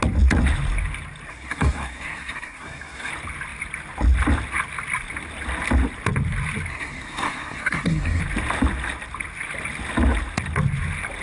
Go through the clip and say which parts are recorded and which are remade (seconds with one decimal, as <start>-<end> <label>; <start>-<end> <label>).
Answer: 0.0-1.3 recorded; 1.3-3.1 remade; 3.1-6.7 recorded; 6.7-8.2 remade; 8.2-11.2 recorded